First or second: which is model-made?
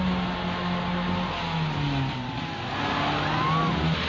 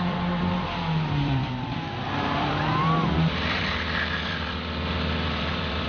second